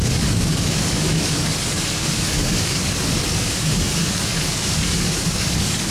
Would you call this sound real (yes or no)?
no